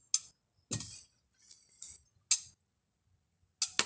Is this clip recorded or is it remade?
recorded